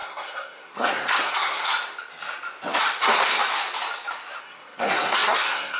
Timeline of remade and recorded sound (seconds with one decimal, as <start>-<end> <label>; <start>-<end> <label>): 0.0-1.7 remade; 1.7-4.4 recorded; 4.4-5.8 remade